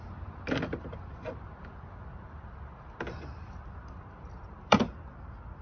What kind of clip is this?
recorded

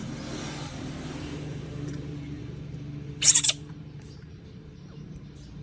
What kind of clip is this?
remade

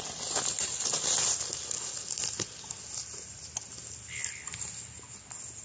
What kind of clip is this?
recorded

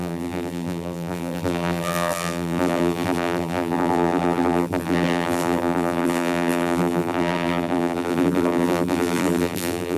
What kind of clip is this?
remade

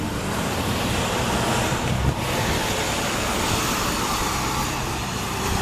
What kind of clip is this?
remade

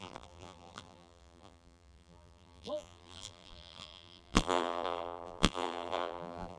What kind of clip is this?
remade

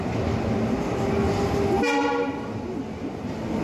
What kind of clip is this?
recorded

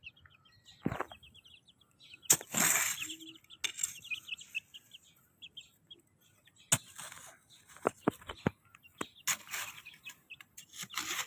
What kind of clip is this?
recorded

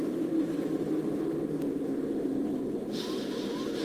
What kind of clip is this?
recorded